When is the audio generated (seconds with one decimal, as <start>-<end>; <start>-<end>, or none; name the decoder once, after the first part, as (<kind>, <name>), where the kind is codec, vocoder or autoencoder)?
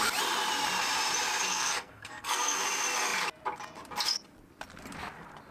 1.5-2.6 (codec, SNAC)